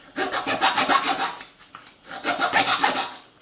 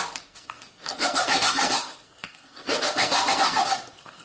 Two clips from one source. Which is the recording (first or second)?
first